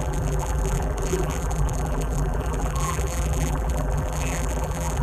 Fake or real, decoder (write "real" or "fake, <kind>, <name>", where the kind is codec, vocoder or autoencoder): fake, vocoder, BigVGAN v2